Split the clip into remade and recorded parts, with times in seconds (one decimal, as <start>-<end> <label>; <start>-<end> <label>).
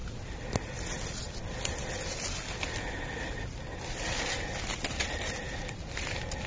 0.0-6.5 recorded